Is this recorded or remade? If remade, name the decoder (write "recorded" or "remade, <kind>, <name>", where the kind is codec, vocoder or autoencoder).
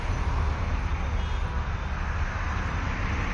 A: recorded